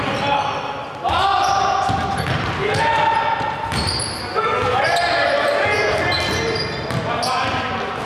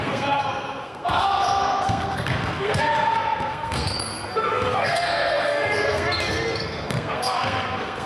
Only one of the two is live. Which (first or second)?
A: first